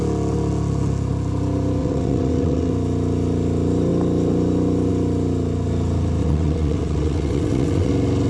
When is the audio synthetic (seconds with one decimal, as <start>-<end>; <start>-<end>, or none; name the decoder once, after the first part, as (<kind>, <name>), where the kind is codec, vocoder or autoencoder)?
1.8-2.7 (vocoder, WaveNeXt); 6.2-7.9